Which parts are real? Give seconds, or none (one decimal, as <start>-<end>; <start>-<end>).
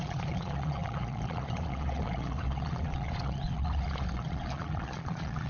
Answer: none